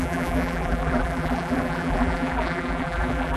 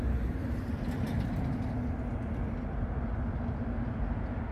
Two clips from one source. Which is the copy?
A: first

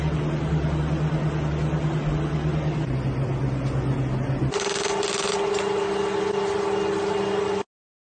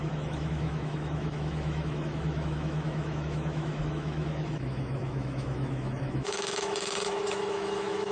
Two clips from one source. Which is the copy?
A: second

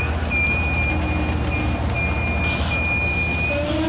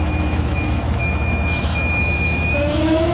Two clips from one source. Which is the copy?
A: second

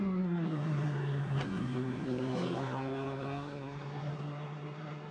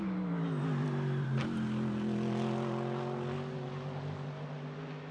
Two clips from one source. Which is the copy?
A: first